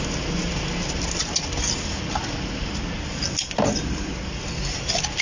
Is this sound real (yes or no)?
yes